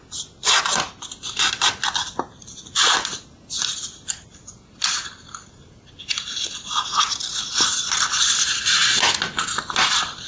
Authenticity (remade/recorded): recorded